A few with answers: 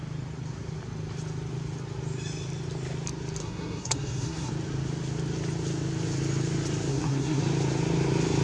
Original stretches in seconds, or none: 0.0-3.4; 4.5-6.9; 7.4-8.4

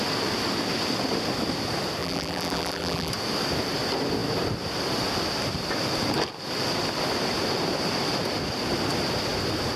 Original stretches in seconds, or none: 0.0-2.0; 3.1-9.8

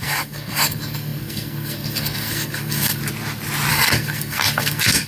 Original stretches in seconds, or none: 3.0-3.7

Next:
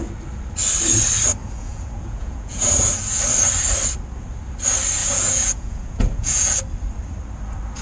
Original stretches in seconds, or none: 0.0-1.4; 3.2-5.0; 6.5-7.8

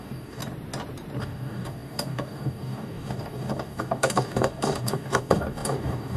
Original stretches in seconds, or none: 0.4-1.2

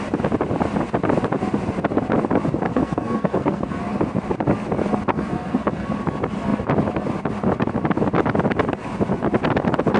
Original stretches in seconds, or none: 0.0-2.7; 3.8-5.1; 5.9-10.0

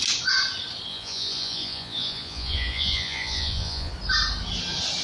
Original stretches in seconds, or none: 0.0-0.9; 3.9-5.0

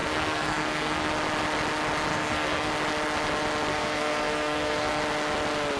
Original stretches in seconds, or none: 1.1-2.1; 2.7-3.7; 5.0-5.8